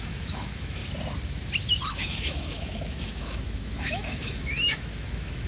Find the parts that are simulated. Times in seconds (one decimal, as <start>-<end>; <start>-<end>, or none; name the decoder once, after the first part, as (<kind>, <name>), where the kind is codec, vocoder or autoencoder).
0.0-0.8 (autoencoder, DAC-VAE); 1.9-5.5